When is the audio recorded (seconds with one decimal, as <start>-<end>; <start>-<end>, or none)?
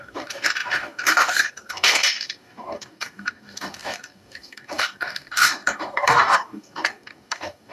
none